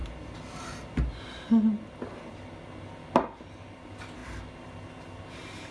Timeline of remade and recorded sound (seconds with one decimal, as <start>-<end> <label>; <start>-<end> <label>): 0.0-5.7 recorded